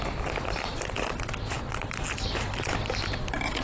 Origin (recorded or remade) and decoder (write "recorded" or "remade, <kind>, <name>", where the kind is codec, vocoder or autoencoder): recorded